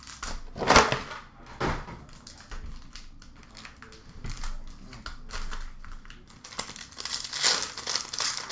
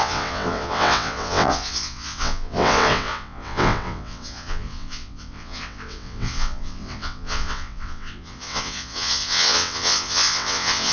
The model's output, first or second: second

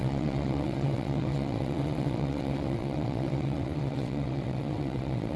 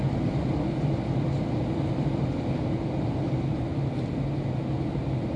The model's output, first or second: first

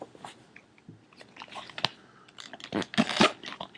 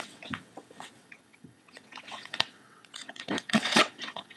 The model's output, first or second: second